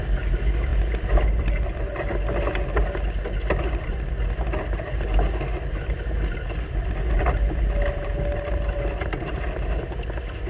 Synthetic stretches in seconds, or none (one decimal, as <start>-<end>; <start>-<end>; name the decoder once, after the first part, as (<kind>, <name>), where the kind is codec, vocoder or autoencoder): none